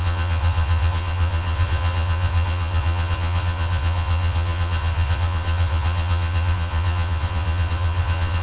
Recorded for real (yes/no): no